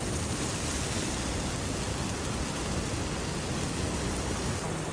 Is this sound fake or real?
real